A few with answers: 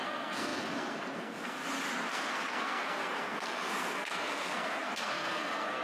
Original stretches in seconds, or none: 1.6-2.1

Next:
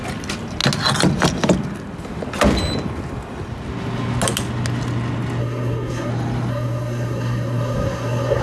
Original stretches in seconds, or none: 0.0-5.4; 6.1-6.5

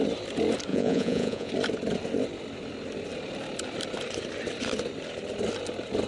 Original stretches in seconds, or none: 0.0-0.7; 1.5-6.1

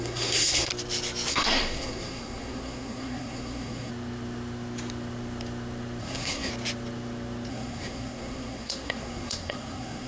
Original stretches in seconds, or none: 0.7-1.3; 3.9-6.0; 6.5-7.5

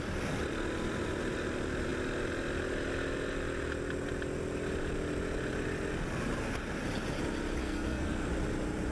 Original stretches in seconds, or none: 0.0-7.6; 8.3-8.9

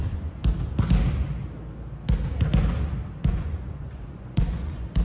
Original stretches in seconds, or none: 0.4-3.3

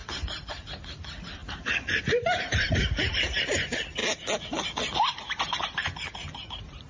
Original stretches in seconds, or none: 0.0-0.5; 4.0-6.5